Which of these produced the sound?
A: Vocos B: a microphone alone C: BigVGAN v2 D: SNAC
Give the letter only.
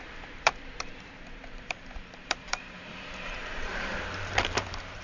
C